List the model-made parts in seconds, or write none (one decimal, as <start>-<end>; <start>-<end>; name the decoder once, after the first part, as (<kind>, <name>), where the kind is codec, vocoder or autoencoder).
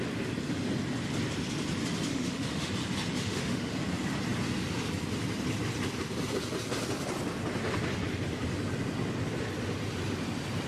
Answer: 2.1-2.7 (autoencoder, DAC-VAE); 3.1-3.7